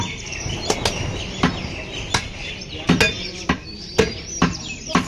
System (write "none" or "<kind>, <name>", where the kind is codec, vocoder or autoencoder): none